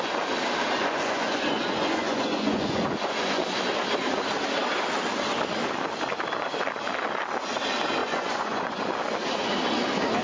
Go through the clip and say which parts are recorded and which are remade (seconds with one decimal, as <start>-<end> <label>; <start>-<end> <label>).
0.0-0.8 recorded; 0.8-3.4 remade; 3.4-8.0 recorded; 8.0-8.8 remade; 8.8-10.2 recorded